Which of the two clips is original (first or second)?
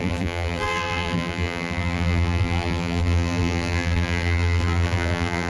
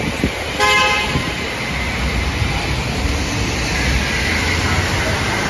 second